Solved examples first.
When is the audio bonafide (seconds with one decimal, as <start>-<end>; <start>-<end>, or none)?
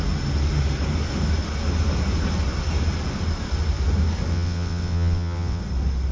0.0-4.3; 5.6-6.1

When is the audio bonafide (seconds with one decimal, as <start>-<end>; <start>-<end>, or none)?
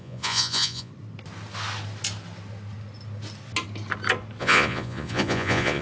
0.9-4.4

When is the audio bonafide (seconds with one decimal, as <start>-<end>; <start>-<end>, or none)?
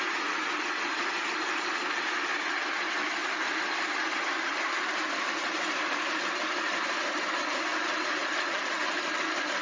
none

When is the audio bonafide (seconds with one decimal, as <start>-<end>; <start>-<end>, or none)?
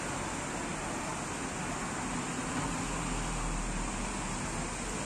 0.0-5.1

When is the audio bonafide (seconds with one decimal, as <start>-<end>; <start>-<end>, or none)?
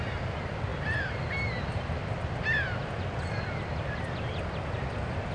0.0-5.3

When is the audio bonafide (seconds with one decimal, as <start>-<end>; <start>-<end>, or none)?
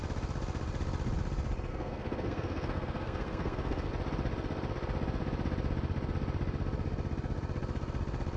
0.0-1.7; 3.9-8.4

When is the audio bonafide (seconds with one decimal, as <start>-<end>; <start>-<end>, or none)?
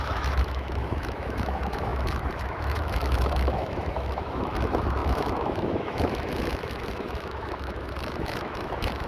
none